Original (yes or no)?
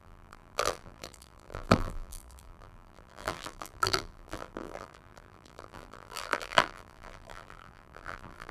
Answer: no